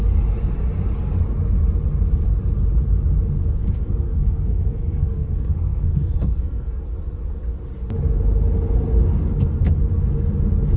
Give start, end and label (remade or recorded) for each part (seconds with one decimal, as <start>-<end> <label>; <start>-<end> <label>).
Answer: 0.0-3.6 recorded; 3.6-6.8 remade; 6.8-10.8 recorded